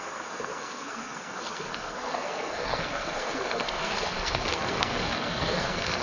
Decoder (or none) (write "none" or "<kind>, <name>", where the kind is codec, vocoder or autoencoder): codec, SNAC